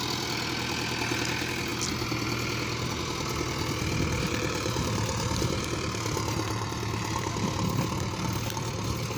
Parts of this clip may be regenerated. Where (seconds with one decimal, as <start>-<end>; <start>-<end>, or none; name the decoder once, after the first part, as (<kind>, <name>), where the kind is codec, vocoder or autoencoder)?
4.3-7.3 (vocoder, BigVGAN v2)